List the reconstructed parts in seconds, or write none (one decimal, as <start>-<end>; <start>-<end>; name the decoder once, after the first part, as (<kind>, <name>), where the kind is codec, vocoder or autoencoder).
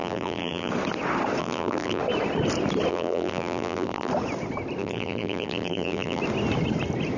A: 0.0-0.7 (vocoder, BigVGAN v2); 1.4-2.0; 2.9-4.1; 4.8-6.2